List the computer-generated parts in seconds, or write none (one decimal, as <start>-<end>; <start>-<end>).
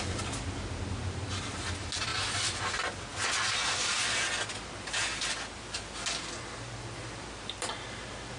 none